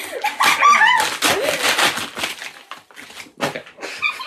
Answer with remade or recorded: recorded